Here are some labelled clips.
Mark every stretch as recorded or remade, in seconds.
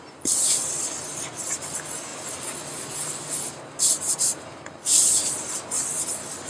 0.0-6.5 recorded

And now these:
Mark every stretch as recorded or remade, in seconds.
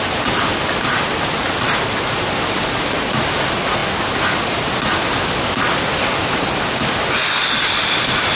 0.0-8.3 recorded